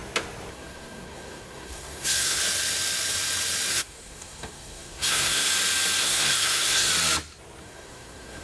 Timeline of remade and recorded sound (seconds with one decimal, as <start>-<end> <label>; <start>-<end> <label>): 0.0-0.5 recorded; 0.5-2.4 remade; 2.4-3.7 recorded; 3.7-5.5 remade; 5.5-6.0 recorded; 6.0-6.9 remade; 6.9-7.6 recorded; 7.6-8.4 remade